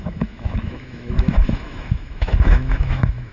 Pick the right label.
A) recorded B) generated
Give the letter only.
B